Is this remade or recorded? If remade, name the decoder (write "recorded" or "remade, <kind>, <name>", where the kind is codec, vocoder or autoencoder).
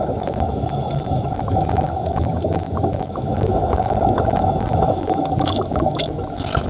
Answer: remade, autoencoder, DAC-VAE